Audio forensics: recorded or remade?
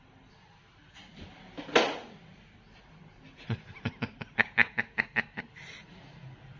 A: recorded